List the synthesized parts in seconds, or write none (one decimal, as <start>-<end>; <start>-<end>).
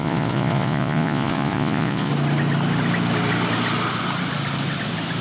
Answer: 0.0-2.1